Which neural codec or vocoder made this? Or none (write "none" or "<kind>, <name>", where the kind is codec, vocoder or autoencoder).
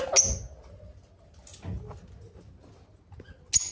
none